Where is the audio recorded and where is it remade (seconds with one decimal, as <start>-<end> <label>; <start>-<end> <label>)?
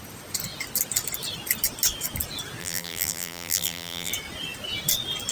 0.0-2.6 recorded; 2.6-4.1 remade; 4.1-5.3 recorded